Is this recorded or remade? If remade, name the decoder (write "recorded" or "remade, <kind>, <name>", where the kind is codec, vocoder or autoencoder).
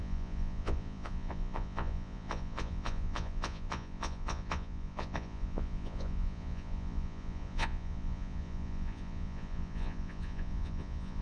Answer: remade, vocoder, Vocos